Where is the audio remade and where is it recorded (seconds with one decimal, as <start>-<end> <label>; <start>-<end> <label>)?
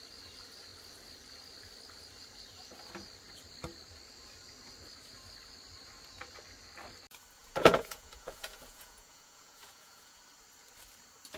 0.0-7.4 recorded; 7.4-10.2 remade; 10.2-11.4 recorded